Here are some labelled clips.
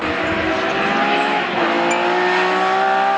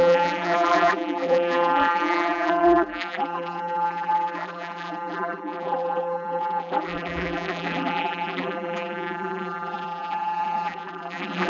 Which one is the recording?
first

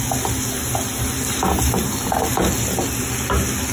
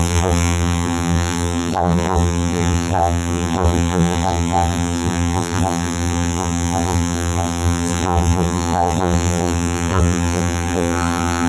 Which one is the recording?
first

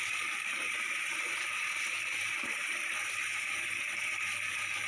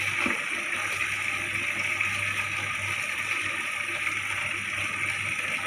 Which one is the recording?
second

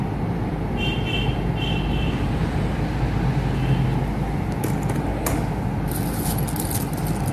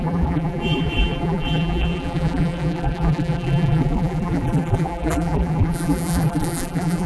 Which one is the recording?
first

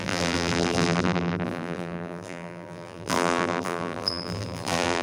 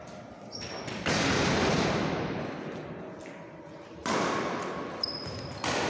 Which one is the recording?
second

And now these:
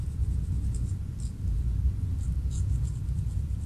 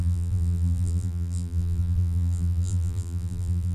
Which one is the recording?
first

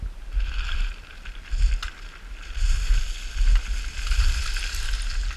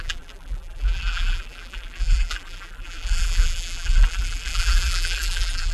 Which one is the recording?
first